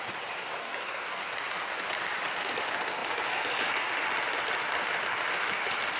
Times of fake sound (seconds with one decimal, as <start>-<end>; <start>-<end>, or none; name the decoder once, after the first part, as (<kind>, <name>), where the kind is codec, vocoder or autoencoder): 0.6-1.2 (codec, SNAC)